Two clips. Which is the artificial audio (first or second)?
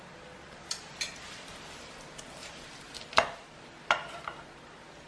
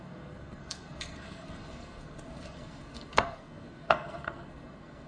second